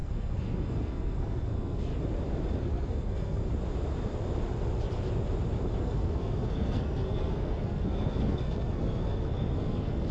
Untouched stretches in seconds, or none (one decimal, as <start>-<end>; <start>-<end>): 1.9-2.6; 3.4-5.8